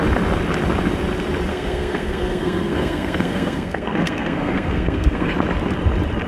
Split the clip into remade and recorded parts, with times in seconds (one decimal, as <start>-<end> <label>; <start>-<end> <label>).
0.0-1.5 recorded; 1.5-5.3 remade; 5.3-6.3 recorded